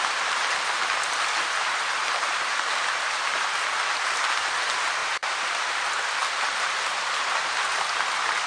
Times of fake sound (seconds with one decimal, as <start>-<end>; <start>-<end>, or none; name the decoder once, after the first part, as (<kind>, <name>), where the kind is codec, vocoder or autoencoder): 5.0-5.8 (vocoder, BigVGAN v2); 6.2-7.3